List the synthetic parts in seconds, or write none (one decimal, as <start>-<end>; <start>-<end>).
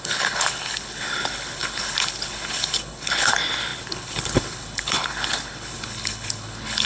0.0-6.9